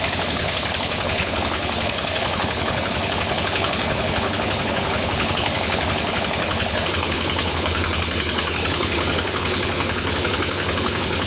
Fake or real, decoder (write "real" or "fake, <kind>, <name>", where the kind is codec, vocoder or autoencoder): fake, codec, HILCodec